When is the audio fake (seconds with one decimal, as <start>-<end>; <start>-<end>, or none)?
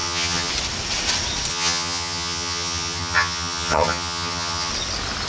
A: 0.0-0.5; 1.5-4.7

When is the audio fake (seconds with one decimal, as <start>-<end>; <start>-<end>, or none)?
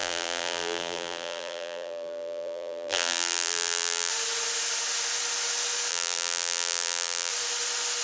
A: 0.0-4.1; 5.9-7.3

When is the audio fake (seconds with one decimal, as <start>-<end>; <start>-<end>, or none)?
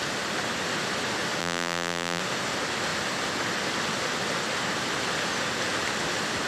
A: 1.4-2.2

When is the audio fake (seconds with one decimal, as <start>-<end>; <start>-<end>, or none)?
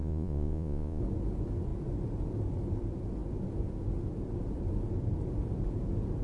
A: 0.0-1.0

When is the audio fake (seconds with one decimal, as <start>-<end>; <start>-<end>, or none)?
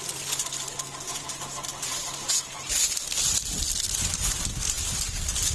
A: 1.7-3.0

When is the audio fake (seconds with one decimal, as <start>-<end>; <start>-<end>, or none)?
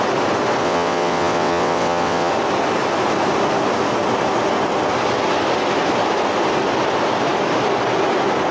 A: 0.6-2.3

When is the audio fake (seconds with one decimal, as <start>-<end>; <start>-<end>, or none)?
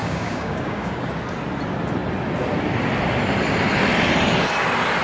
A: 0.0-1.1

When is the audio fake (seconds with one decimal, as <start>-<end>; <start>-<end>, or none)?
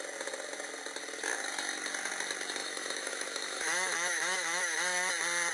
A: 2.6-5.1